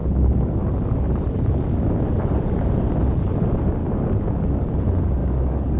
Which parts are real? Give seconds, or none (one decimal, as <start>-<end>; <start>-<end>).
2.9-3.8; 4.7-5.2